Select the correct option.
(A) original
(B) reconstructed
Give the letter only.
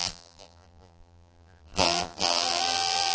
B